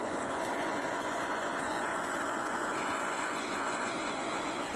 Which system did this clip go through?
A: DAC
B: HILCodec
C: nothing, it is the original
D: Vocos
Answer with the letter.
D